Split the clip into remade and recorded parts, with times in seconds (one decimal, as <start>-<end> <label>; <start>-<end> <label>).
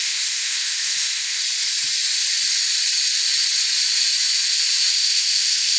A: 0.0-1.4 remade; 1.4-4.9 recorded; 4.9-5.8 remade